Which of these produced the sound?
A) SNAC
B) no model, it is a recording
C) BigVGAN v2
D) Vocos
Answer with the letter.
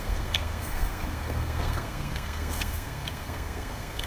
A